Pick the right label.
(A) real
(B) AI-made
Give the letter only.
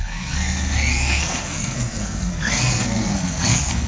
B